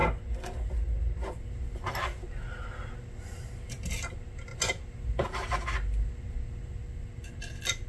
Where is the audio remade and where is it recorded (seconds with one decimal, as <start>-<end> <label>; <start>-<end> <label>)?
0.0-7.9 recorded